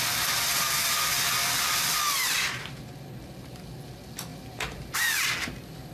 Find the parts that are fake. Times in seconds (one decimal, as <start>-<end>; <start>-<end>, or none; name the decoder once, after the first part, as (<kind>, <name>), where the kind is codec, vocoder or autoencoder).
0.5-1.3 (vocoder, BigVGAN v2); 2.2-2.9; 4.3-5.2